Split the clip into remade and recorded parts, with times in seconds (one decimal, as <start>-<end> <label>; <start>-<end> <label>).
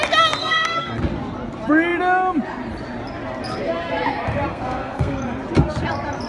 0.0-0.4 recorded; 0.4-0.9 remade; 0.9-4.5 recorded; 4.5-5.2 remade; 5.2-6.3 recorded